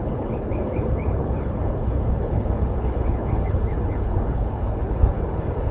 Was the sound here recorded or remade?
remade